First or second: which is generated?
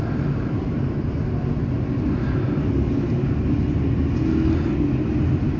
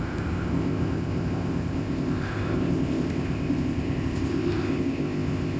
second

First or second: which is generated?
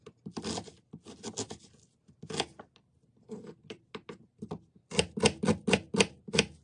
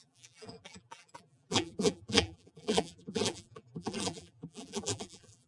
second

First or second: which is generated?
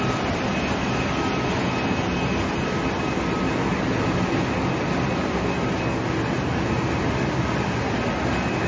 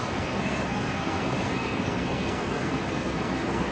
second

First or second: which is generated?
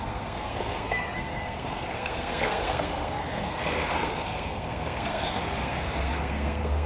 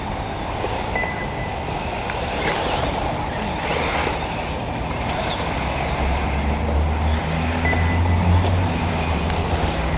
first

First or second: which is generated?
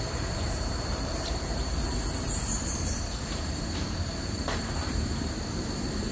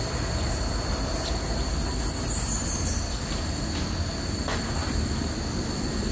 first